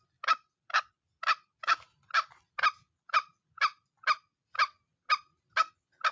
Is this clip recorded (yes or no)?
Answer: yes